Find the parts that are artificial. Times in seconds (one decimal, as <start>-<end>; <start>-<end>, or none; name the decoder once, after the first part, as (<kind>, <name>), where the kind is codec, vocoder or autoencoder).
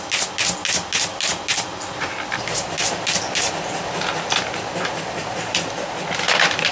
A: none